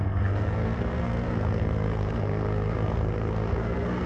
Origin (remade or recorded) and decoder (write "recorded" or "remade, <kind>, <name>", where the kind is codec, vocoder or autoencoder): remade, codec, SNAC